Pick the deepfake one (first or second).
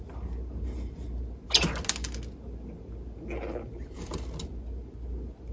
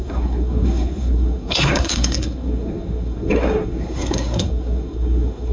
second